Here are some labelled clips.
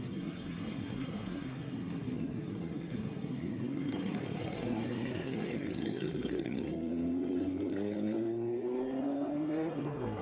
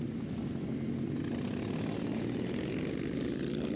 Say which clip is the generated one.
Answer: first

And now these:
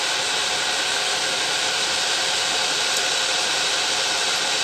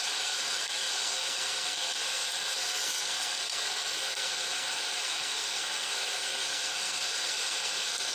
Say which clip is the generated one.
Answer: second